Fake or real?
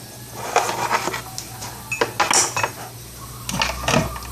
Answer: real